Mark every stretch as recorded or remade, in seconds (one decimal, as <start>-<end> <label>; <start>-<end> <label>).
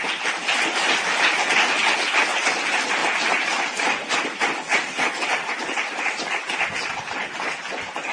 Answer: 0.0-8.1 recorded